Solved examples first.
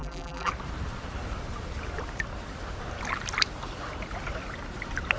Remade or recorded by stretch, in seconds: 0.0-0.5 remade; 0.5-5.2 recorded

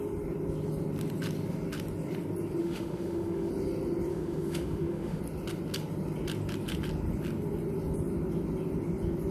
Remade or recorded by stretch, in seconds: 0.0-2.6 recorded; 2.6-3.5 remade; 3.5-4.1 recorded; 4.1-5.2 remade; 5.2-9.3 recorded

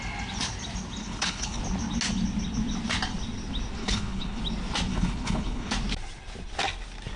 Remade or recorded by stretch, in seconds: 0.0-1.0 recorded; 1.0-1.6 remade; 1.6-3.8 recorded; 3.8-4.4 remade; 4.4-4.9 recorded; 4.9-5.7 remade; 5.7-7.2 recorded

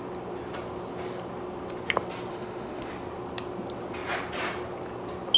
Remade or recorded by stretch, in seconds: 0.0-2.3 recorded; 2.3-2.9 remade; 2.9-5.4 recorded